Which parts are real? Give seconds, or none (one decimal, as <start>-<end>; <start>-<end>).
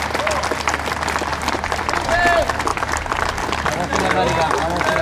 0.0-1.3; 2.2-2.7; 3.2-5.0